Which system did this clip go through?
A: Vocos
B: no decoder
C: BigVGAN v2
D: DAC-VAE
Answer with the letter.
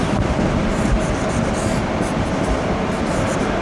C